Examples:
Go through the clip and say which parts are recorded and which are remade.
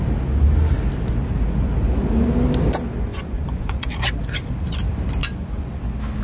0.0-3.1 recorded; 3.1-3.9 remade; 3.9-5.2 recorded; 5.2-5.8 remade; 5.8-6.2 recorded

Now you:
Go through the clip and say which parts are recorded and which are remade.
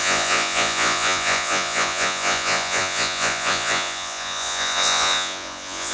0.0-5.9 remade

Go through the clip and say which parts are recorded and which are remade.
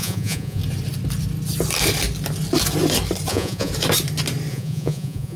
0.0-0.6 remade; 0.6-3.3 recorded; 3.3-3.7 remade; 3.7-4.5 recorded; 4.5-5.4 remade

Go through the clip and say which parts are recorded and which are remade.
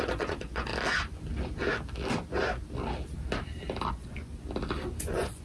0.0-0.7 remade; 0.7-3.9 recorded; 3.9-4.3 remade; 4.3-5.0 recorded; 5.0-5.4 remade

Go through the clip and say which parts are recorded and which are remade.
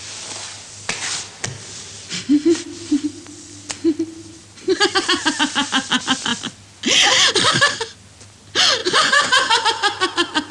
0.0-8.8 recorded; 8.8-9.6 remade; 9.6-10.5 recorded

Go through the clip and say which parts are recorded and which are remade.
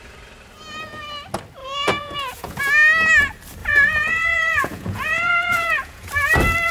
0.0-1.6 recorded; 1.6-2.6 remade; 2.6-3.6 recorded; 3.6-6.1 remade; 6.1-6.7 recorded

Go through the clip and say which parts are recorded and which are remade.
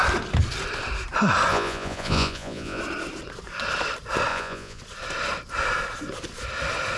0.0-1.5 recorded; 1.5-2.8 remade; 2.8-4.3 recorded; 4.3-4.8 remade; 4.8-7.0 recorded